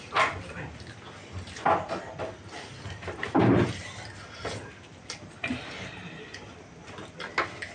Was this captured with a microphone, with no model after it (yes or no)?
yes